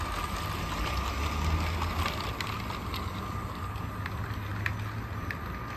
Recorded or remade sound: recorded